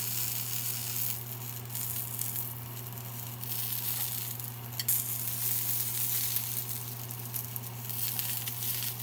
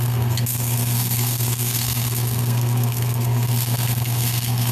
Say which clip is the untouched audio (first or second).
first